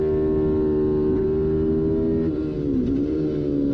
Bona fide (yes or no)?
yes